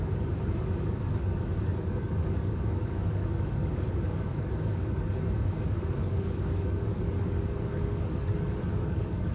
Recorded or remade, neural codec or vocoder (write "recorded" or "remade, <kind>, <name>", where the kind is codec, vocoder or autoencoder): remade, codec, DAC